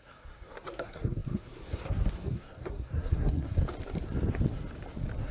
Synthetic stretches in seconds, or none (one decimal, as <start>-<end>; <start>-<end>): 0.0-3.6